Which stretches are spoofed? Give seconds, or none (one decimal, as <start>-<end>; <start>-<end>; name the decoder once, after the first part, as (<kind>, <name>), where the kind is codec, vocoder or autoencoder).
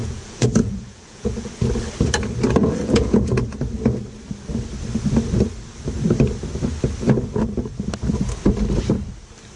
0.0-1.5 (vocoder, Vocos); 2.6-3.3